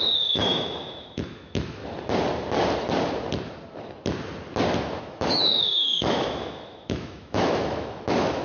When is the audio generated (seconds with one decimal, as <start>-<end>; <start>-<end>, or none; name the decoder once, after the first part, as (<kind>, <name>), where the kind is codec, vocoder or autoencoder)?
0.0-1.8 (autoencoder, DAC-VAE); 5.0-8.4